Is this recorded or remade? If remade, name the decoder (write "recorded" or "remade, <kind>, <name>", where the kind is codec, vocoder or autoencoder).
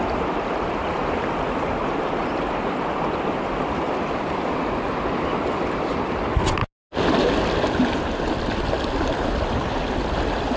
recorded